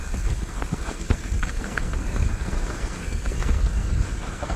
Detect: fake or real fake